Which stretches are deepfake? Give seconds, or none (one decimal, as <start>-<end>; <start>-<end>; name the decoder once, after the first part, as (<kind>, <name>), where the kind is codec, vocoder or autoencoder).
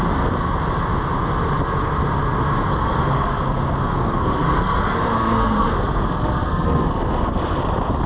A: 2.7-7.6 (codec, SNAC)